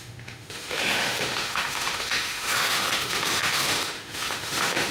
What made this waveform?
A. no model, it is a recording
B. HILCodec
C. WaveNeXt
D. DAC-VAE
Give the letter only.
D